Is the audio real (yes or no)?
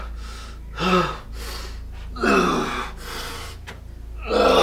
yes